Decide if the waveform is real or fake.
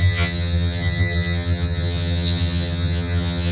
fake